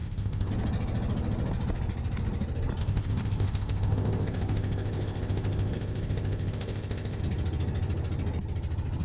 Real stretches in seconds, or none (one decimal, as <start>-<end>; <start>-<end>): 0.5-2.8; 7.2-9.0